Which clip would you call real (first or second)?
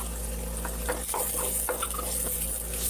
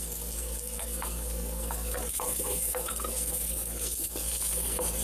first